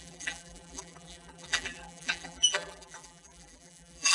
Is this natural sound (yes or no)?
no